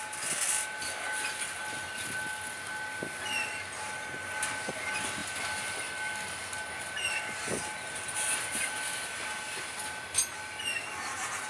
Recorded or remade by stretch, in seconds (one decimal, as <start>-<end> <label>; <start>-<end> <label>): 0.0-11.5 recorded